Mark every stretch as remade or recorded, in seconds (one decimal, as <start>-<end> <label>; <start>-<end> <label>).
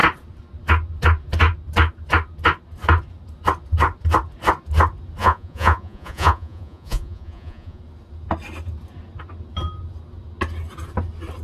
0.0-5.2 recorded; 5.2-7.8 remade; 7.8-11.4 recorded